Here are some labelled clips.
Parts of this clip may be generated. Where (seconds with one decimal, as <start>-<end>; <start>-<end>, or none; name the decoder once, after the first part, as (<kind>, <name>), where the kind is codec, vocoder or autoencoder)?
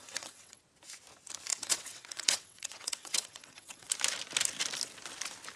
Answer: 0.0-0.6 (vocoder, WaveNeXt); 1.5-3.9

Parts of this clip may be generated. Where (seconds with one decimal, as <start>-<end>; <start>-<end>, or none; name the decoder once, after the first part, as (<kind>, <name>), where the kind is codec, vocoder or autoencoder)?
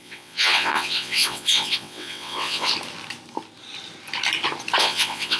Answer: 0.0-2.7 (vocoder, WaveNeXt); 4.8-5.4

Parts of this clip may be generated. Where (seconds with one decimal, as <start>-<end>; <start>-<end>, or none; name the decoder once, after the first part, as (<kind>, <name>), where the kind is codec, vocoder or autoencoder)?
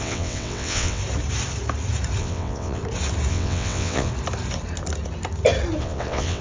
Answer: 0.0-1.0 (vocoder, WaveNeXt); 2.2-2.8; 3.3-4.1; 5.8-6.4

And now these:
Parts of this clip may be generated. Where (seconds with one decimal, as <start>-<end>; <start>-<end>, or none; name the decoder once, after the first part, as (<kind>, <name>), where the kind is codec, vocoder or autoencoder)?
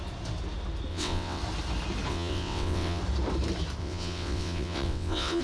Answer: 0.9-1.4 (vocoder, WaveNeXt); 2.1-3.0; 3.8-5.4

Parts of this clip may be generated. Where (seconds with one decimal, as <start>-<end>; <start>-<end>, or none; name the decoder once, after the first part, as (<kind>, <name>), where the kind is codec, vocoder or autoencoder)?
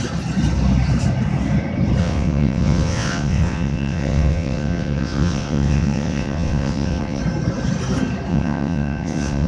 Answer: 2.0-7.2 (vocoder, WaveNeXt); 8.3-9.5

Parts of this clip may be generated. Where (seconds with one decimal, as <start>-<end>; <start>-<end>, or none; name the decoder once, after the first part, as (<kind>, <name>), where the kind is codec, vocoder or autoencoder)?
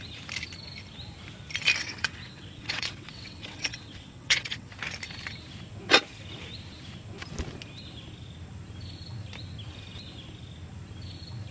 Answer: 1.8-4.7 (vocoder, WaveNeXt)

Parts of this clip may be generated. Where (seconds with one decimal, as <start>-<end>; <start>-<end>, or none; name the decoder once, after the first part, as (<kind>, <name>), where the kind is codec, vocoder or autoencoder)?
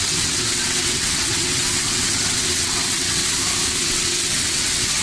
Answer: 0.0-3.2 (vocoder, WaveNeXt); 3.8-5.0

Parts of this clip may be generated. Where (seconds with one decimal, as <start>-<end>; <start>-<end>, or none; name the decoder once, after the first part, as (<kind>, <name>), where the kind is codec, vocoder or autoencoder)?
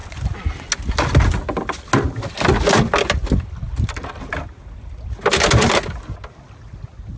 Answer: none